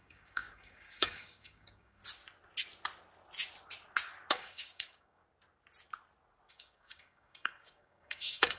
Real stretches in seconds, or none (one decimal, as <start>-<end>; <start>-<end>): 2.0-4.3; 5.2-6.5